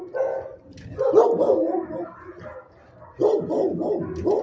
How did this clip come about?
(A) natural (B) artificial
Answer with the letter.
A